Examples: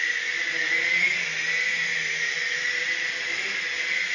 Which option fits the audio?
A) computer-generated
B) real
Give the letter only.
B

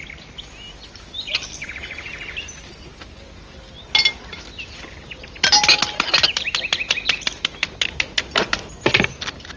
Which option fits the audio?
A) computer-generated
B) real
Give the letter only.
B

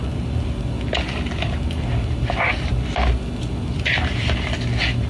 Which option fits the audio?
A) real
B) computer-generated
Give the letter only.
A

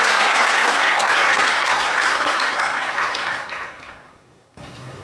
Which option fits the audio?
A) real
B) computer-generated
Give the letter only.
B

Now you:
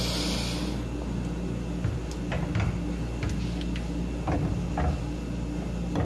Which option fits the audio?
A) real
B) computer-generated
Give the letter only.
A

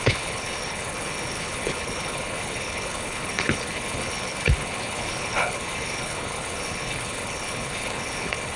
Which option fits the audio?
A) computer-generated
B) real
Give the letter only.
A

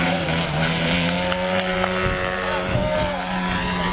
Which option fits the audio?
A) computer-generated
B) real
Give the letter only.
A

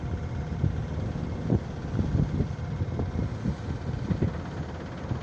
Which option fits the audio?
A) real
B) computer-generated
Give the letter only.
A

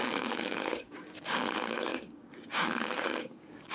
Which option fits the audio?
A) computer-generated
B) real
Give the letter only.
A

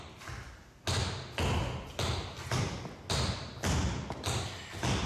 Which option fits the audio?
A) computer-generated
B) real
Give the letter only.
B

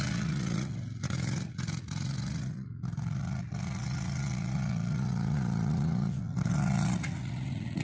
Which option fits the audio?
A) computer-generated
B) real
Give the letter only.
A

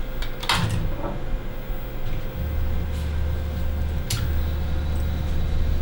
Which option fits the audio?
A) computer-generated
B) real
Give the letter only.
B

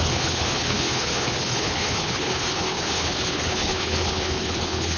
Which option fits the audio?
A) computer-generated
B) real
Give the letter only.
A